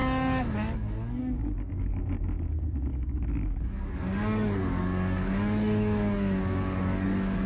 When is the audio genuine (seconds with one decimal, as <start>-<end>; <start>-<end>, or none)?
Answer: 2.0-2.9